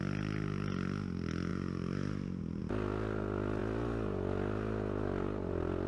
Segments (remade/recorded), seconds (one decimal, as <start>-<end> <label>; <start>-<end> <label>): 0.0-1.5 recorded; 1.5-2.6 remade; 2.6-5.9 recorded